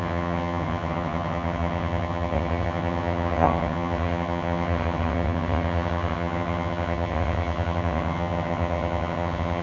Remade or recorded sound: remade